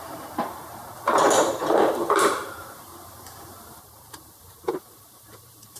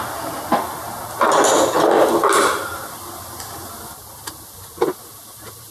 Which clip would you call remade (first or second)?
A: first